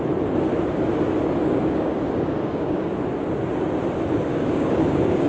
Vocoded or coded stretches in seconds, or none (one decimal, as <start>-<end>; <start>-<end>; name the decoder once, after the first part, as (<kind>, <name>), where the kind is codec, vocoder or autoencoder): 1.4-2.9 (codec, DAC); 4.3-5.3

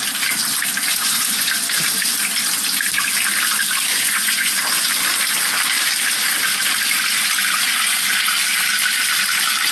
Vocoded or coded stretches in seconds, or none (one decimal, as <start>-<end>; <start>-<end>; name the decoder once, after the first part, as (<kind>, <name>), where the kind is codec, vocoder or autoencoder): 0.9-1.5 (vocoder, Vocos); 3.9-4.5

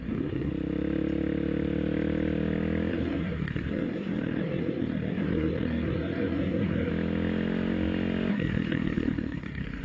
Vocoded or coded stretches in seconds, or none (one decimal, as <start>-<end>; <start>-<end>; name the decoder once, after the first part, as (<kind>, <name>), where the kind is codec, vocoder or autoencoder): 0.0-0.5 (codec, SNAC); 2.9-6.9; 8.3-9.8

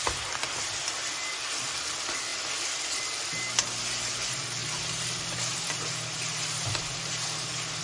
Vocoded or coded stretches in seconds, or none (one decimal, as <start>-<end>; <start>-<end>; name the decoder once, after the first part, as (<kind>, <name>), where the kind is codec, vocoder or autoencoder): 4.6-7.8 (vocoder, BigVGAN v2)

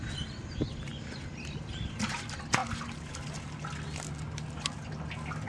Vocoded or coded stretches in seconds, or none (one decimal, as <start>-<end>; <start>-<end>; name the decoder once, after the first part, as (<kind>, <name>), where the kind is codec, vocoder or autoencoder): none